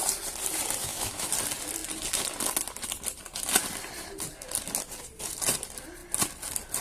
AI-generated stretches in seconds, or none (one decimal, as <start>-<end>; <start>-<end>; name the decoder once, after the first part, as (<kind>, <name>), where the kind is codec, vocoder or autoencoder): 0.8-1.3 (autoencoder, DAC-VAE)